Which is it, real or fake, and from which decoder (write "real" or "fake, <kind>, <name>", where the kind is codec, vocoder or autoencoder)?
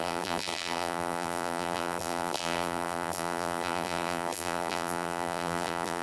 fake, vocoder, BigVGAN v2